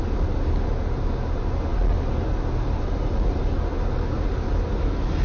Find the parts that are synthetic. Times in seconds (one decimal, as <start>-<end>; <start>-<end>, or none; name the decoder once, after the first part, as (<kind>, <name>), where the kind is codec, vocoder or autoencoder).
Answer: none